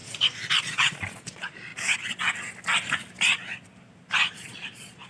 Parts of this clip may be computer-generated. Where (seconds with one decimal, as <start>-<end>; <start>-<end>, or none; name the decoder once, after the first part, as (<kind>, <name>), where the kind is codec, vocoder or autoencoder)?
0.6-1.7 (vocoder, Vocos); 4.3-5.1